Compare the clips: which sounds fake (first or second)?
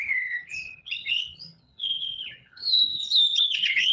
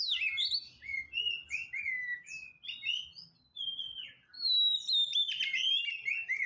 first